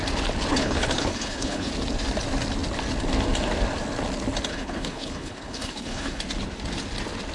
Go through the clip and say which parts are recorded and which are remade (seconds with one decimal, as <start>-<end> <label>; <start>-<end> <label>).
0.0-0.5 recorded; 0.5-1.7 remade; 1.7-4.5 recorded; 4.5-6.2 remade; 6.2-7.3 recorded